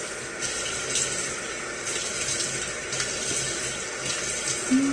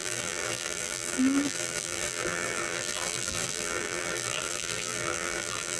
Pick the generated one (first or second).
second